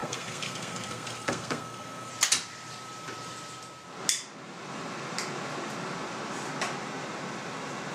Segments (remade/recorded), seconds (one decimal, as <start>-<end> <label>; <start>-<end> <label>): 0.0-2.1 remade; 2.1-7.9 recorded